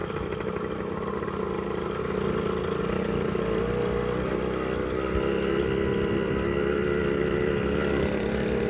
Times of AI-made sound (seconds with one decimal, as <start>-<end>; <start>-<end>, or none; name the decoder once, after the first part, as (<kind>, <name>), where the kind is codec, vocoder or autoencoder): none